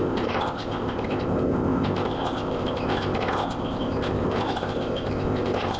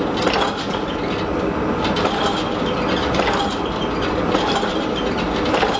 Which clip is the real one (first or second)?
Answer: second